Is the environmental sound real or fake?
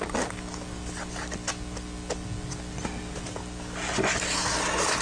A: real